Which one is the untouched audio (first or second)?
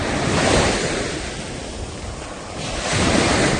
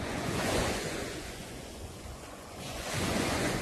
first